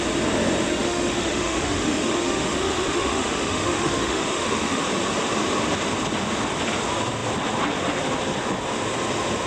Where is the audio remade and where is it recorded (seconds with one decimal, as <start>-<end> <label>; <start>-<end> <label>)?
0.0-0.7 recorded; 0.7-4.8 remade; 4.8-9.5 recorded